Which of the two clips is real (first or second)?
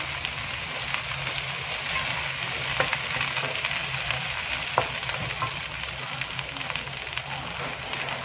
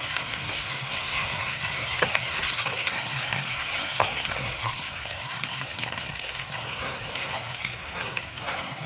first